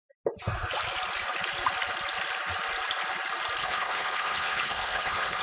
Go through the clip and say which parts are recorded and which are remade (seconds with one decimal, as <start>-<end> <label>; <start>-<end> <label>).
0.0-3.6 recorded; 3.6-5.4 remade